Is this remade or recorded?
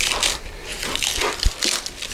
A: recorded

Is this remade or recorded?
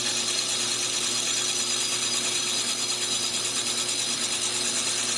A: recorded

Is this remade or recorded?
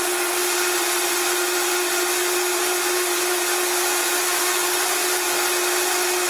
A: recorded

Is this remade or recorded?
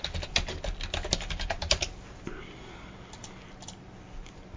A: recorded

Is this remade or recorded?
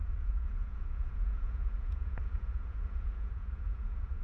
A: remade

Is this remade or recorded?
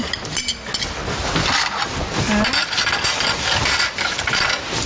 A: recorded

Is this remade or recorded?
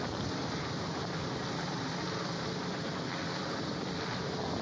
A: remade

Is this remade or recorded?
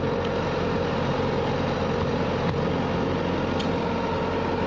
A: recorded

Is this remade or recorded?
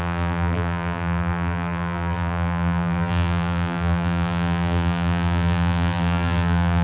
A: remade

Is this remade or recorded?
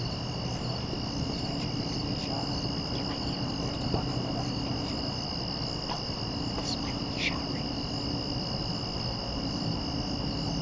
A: recorded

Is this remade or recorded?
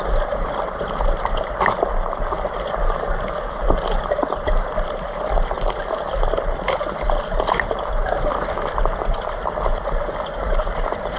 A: recorded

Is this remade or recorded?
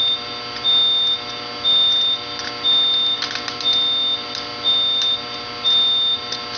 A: recorded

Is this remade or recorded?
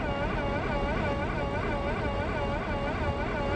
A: recorded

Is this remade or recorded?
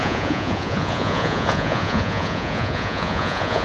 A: remade